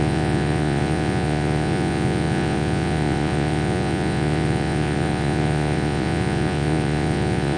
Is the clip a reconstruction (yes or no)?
yes